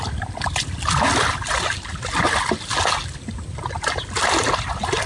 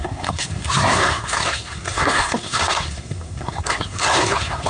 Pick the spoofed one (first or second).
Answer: second